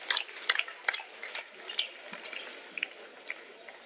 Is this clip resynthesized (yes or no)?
no